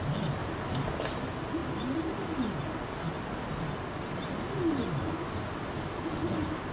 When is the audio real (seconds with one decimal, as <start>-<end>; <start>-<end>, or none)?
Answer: 0.0-6.7